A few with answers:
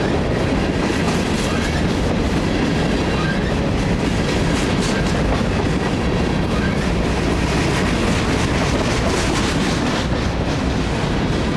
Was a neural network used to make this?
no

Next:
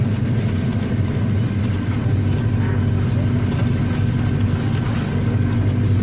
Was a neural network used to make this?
no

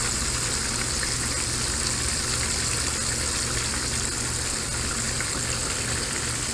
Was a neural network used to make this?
no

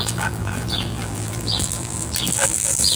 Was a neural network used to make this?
yes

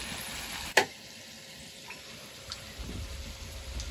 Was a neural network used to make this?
no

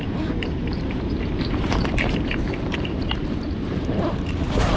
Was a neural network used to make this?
yes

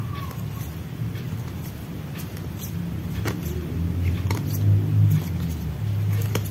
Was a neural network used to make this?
no